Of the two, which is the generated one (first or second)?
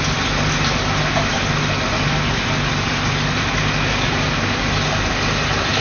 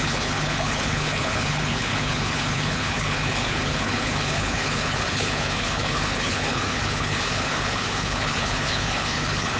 second